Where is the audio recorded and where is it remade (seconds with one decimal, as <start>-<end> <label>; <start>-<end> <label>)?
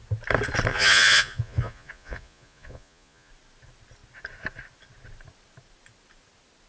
0.0-0.7 recorded; 0.7-3.3 remade; 3.3-6.7 recorded